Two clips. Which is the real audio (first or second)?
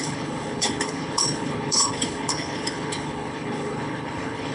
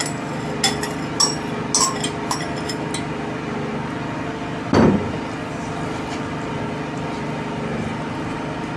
second